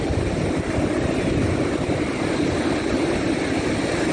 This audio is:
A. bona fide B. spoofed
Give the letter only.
A